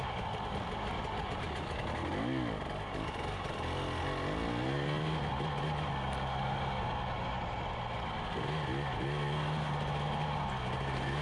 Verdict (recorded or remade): recorded